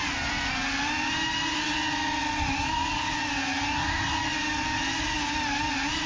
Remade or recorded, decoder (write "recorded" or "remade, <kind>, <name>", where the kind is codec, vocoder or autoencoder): recorded